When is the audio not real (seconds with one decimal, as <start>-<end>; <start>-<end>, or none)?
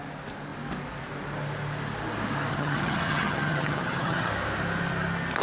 2.5-4.3